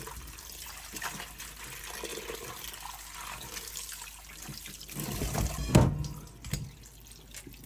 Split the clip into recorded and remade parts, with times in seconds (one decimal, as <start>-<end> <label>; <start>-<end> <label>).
0.0-7.7 recorded